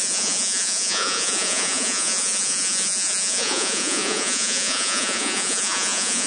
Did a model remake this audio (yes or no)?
yes